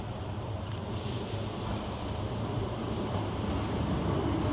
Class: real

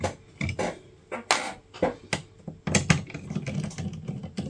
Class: real